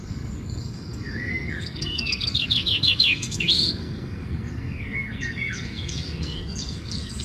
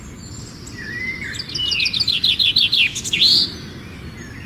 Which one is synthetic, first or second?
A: first